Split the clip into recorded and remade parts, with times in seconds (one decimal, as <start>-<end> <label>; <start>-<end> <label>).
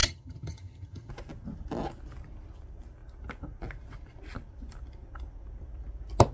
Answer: 0.0-1.1 remade; 1.1-6.3 recorded